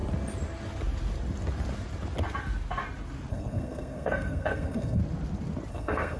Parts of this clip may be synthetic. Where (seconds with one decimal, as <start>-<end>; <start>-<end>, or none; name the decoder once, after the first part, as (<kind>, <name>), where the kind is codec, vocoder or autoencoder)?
3.3-5.0 (codec, SNAC); 5.7-6.2